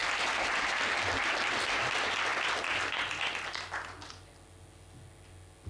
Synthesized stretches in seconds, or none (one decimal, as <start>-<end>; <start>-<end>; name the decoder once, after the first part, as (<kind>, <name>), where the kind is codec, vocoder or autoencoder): 0.0-1.1 (vocoder, BigVGAN v2)